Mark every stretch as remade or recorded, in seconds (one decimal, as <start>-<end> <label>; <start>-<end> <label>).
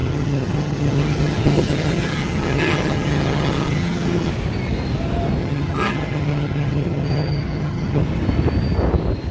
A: 0.0-4.3 remade; 4.3-5.4 recorded; 5.4-8.0 remade; 8.0-9.3 recorded